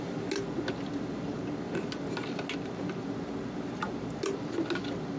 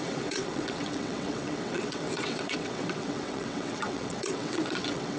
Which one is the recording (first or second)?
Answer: first